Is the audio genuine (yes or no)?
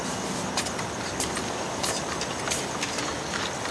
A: yes